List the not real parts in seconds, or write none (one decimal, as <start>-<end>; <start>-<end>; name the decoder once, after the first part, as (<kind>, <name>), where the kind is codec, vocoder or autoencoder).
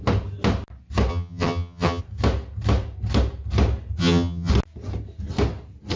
1.1-2.0 (vocoder, HiFi-GAN); 4.0-4.5